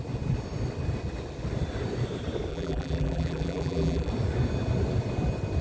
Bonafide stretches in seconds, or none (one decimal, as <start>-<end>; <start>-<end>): 0.0-2.5; 4.1-5.6